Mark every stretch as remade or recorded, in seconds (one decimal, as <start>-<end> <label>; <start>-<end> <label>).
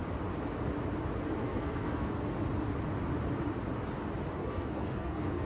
0.0-1.4 recorded; 1.4-2.1 remade; 2.1-4.4 recorded; 4.4-5.5 remade